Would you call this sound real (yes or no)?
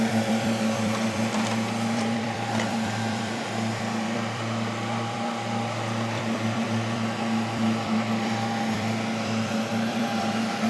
no